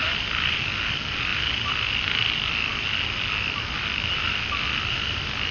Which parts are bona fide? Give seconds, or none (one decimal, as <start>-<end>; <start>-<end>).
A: 0.0-5.5